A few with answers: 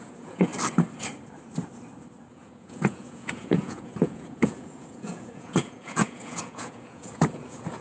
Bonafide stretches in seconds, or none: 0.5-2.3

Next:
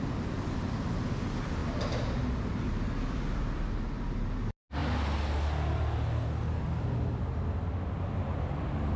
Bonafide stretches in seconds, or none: 0.0-9.0

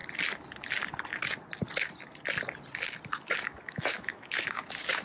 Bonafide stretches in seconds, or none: 0.0-3.0